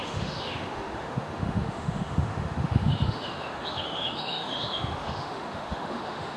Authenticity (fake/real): fake